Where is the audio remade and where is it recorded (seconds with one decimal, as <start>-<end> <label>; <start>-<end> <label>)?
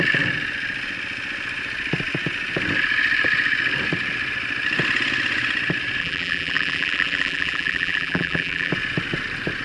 0.0-6.0 recorded; 6.0-8.7 remade; 8.7-9.6 recorded